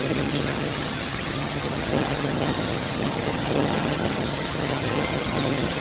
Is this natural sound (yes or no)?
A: no